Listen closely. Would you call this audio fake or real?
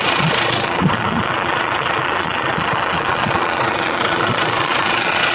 fake